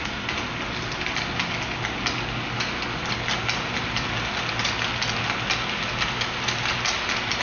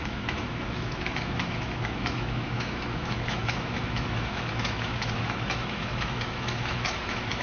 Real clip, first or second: first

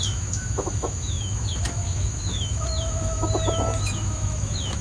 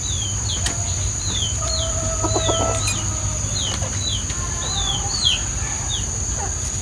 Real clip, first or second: second